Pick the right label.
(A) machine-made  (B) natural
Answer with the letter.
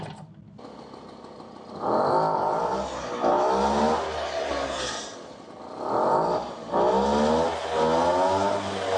B